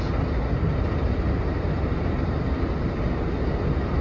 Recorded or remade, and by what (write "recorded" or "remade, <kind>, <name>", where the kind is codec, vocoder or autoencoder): recorded